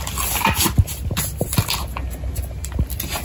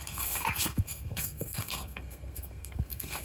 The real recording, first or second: first